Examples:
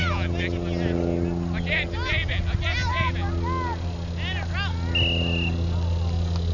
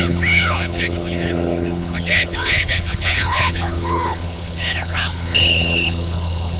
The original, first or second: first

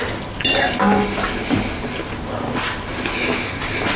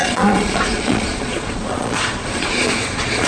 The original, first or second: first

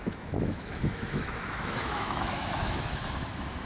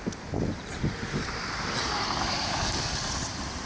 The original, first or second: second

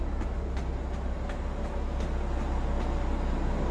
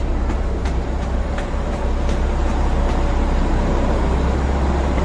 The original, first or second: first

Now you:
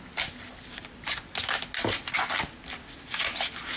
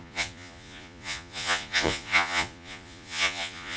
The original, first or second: first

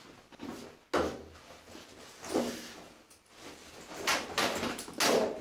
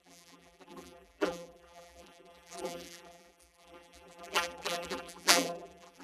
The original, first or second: first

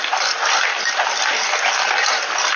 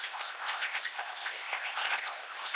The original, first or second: first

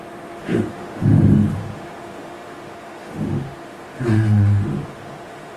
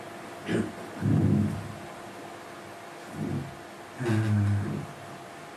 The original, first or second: second